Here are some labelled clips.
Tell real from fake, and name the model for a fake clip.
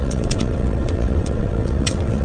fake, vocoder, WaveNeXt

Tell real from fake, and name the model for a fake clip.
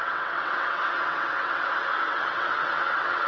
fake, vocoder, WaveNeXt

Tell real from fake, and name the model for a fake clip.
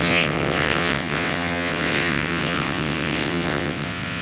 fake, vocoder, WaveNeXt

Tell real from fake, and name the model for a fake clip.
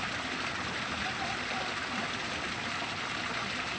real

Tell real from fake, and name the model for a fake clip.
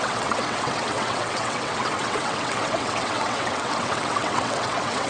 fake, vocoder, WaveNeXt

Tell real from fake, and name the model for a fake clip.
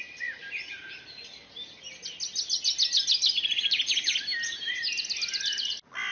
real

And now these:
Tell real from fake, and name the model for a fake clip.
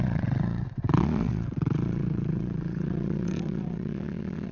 fake, vocoder, WaveNeXt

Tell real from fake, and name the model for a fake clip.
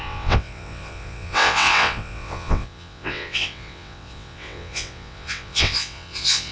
fake, vocoder, WaveNeXt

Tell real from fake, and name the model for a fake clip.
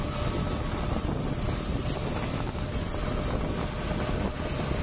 real